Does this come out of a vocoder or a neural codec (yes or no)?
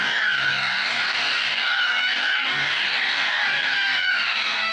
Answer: yes